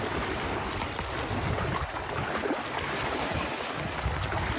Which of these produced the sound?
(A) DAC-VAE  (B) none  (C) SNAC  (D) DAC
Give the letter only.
B